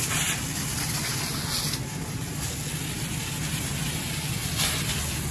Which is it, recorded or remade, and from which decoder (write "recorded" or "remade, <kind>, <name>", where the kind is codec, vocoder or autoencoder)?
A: recorded